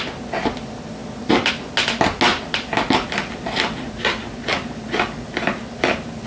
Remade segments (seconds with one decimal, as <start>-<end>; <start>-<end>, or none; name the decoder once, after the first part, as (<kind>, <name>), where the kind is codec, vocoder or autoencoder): 2.3-6.3 (vocoder, BigVGAN v2)